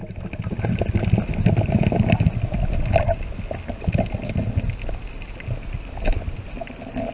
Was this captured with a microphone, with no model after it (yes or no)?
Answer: yes